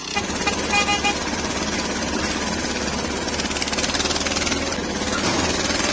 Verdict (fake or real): real